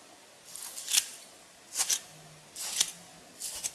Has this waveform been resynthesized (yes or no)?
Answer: no